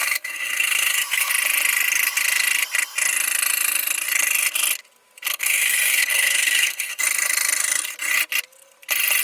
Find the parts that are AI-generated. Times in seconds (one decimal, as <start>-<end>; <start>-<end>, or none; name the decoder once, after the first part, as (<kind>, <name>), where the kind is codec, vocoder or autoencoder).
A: 0.0-1.3 (codec, SNAC); 5.3-7.0